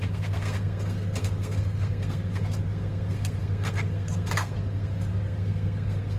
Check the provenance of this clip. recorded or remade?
remade